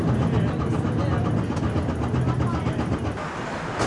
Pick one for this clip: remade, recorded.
recorded